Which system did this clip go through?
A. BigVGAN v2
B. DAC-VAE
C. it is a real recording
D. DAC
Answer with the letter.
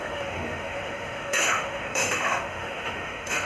B